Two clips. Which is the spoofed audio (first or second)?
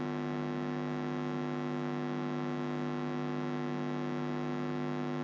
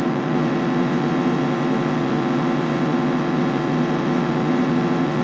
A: second